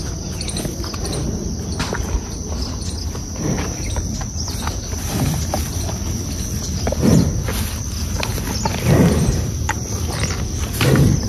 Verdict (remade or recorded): recorded